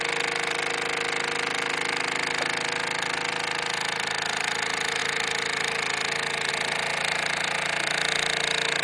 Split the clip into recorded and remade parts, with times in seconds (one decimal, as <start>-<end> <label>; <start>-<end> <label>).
0.0-8.8 recorded